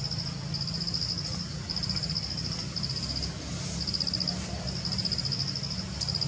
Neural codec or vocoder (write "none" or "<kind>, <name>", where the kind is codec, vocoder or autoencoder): none